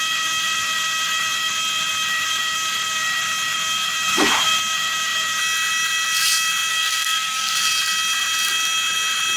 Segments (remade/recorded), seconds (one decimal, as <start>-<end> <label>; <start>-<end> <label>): 0.0-6.7 recorded; 6.7-7.7 remade; 7.7-9.4 recorded